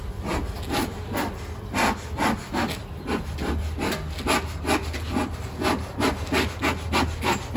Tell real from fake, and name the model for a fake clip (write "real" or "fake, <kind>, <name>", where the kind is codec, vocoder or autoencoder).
real